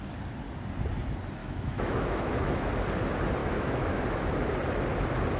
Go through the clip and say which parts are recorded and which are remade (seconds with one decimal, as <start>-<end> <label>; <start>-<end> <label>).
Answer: 0.0-1.4 recorded; 1.4-2.7 remade; 2.7-3.4 recorded; 3.4-4.0 remade; 4.0-5.4 recorded